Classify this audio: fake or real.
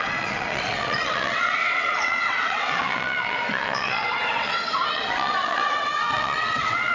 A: fake